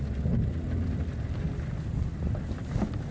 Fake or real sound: real